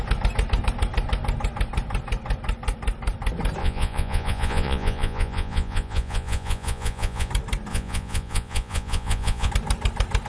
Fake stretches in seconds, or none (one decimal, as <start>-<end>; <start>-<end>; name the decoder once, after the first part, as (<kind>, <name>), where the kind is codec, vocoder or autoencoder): 3.6-7.3 (vocoder, Vocos); 7.7-9.5